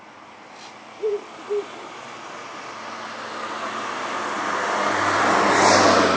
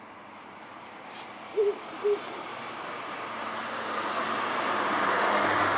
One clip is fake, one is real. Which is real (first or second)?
first